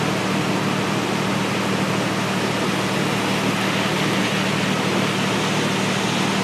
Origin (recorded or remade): recorded